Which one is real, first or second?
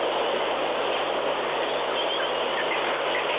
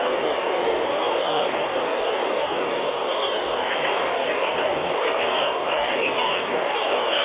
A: first